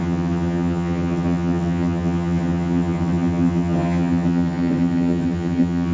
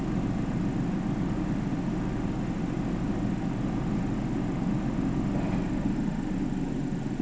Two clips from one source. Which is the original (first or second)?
second